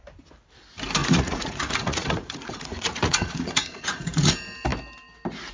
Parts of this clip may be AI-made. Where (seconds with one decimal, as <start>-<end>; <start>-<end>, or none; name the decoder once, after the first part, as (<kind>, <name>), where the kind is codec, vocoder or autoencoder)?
1.0-4.3 (vocoder, Vocos)